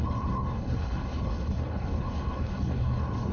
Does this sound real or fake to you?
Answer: fake